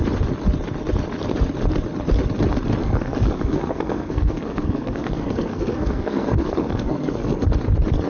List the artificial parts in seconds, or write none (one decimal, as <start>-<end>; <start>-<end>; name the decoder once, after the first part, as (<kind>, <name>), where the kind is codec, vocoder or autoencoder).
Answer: 2.8-7.4 (codec, SNAC)